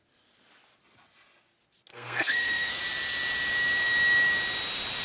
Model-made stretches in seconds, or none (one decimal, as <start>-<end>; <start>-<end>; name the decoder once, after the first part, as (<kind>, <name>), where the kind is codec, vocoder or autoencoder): 1.9-2.8 (codec, SNAC)